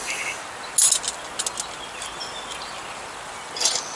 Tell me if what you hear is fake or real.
real